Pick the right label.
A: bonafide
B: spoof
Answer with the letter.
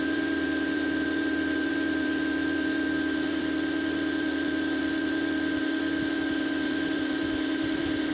B